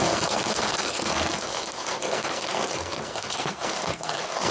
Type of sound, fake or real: fake